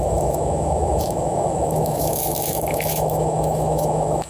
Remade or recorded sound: remade